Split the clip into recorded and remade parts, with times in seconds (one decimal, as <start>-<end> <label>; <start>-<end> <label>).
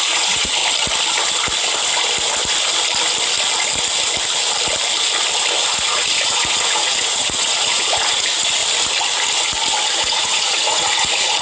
0.0-0.6 remade; 0.6-5.7 recorded; 5.7-8.6 remade; 8.6-9.9 recorded; 9.9-11.4 remade